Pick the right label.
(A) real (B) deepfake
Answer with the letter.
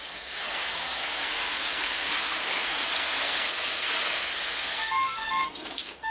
B